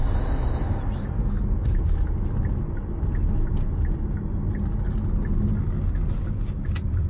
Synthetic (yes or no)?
no